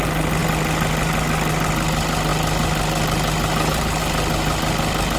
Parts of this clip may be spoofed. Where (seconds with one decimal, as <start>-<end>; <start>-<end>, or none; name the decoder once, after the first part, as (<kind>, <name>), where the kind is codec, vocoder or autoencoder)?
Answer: none